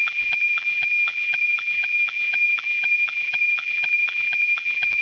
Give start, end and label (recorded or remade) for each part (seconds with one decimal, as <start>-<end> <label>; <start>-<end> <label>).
0.0-5.0 remade